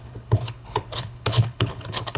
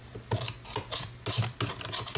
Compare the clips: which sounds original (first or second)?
second